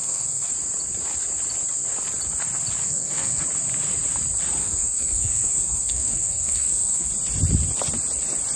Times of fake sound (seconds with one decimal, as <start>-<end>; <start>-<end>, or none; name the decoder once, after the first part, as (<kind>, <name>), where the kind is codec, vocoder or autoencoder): 0.0-0.5 (codec, SNAC); 2.8-3.4; 4.6-7.1